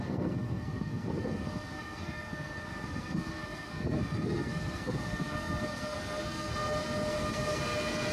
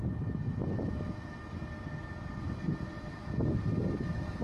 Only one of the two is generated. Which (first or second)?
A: first